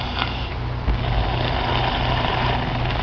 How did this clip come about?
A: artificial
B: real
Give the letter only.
B